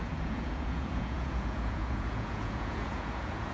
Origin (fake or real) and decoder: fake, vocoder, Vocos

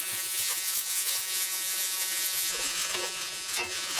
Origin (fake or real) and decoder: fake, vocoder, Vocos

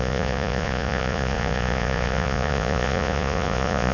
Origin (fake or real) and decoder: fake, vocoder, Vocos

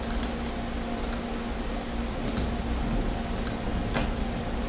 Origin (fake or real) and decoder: real